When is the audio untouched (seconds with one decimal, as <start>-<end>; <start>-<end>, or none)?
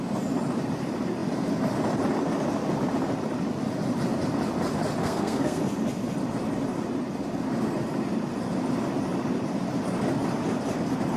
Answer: 0.0-5.0; 5.6-11.2